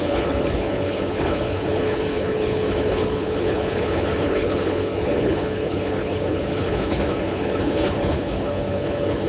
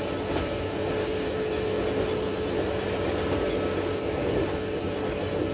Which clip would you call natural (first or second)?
second